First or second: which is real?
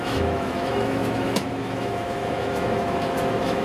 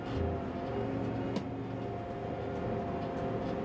second